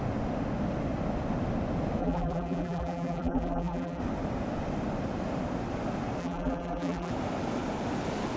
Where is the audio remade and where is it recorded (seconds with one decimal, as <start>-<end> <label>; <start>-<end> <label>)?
0.0-2.0 recorded; 2.0-4.0 remade; 4.0-6.2 recorded; 6.2-7.1 remade; 7.1-8.4 recorded